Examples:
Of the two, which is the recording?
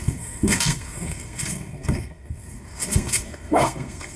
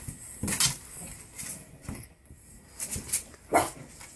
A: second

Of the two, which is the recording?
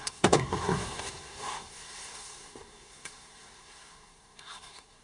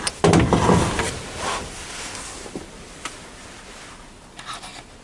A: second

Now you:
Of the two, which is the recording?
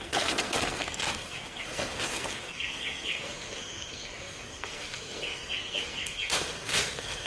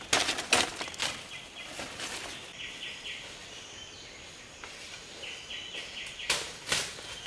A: second